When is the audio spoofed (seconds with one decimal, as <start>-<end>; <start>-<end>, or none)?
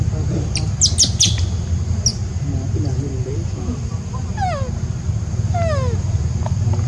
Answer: none